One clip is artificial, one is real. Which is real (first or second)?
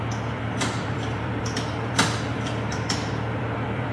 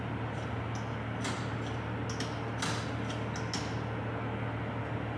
second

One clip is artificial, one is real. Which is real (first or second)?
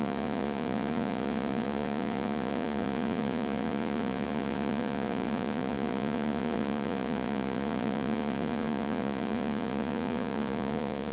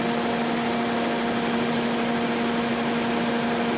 second